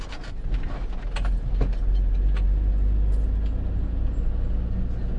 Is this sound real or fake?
real